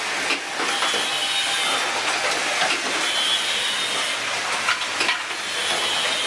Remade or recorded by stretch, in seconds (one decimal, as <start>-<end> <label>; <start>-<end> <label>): 0.0-6.3 recorded